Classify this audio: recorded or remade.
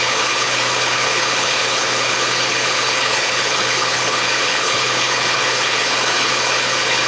remade